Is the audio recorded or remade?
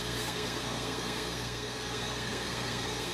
remade